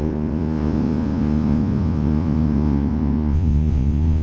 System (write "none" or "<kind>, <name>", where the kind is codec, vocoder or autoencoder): vocoder, Vocos